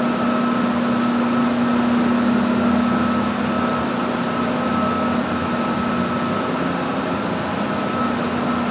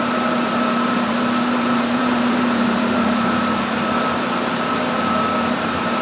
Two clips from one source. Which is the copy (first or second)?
second